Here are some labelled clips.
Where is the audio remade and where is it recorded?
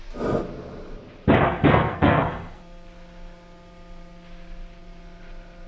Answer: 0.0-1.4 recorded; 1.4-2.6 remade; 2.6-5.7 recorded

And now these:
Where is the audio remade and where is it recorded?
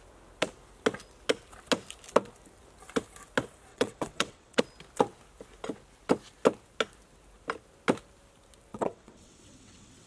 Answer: 0.0-3.7 recorded; 3.7-4.6 remade; 4.6-8.7 recorded; 8.7-10.1 remade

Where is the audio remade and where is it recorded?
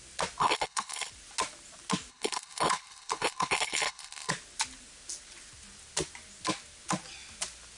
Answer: 0.0-0.4 recorded; 0.4-1.1 remade; 1.1-2.1 recorded; 2.1-4.3 remade; 4.3-7.8 recorded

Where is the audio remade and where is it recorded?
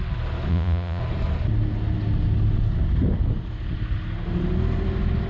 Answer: 0.0-0.5 recorded; 0.5-1.0 remade; 1.0-5.3 recorded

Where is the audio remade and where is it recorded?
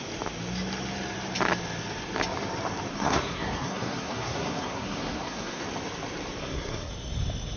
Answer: 0.0-2.9 recorded; 2.9-5.6 remade; 5.6-6.4 recorded; 6.4-6.9 remade; 6.9-7.6 recorded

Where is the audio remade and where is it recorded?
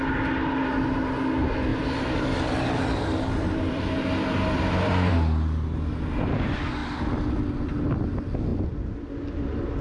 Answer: 0.0-1.7 recorded; 1.7-5.1 remade; 5.1-8.5 recorded; 8.5-9.1 remade; 9.1-9.8 recorded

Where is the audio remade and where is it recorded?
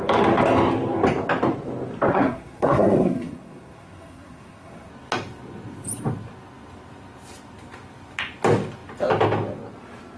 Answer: 0.0-2.1 recorded; 2.1-4.9 remade; 4.9-10.2 recorded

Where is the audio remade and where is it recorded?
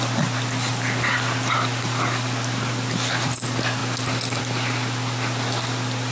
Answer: 0.0-6.1 recorded